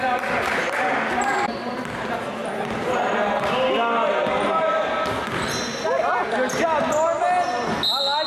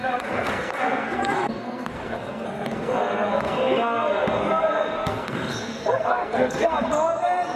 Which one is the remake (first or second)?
second